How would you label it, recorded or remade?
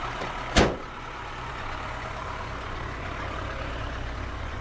remade